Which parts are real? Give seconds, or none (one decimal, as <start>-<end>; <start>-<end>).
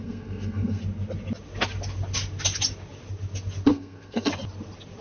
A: 0.8-3.7; 4.3-5.0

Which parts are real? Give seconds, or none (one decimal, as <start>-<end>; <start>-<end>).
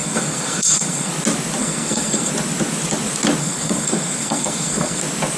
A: 1.1-1.6; 2.3-3.4; 5.0-5.4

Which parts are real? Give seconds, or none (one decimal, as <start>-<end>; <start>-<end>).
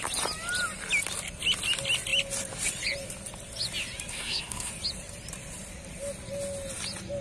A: 0.0-4.1; 4.7-7.2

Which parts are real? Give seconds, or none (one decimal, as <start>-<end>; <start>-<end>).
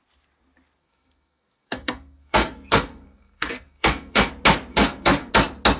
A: 0.0-0.8; 4.3-4.7; 5.3-5.8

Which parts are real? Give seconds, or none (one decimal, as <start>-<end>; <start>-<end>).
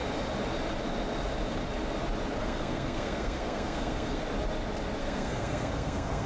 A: 0.0-2.4; 4.2-5.0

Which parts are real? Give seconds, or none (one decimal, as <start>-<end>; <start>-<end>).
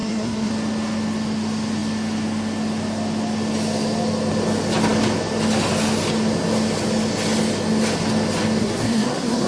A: 0.5-8.6